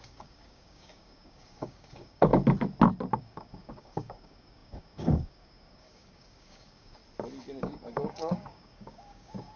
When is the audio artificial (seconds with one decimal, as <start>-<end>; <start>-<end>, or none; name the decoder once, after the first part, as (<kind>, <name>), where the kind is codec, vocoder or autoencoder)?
0.0-2.3 (codec, DAC); 3.2-7.0; 7.6-9.6